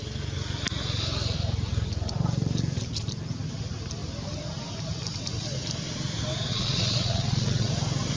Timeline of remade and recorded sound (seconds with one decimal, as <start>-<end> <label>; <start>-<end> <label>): 0.0-6.5 recorded; 6.5-7.7 remade; 7.7-8.2 recorded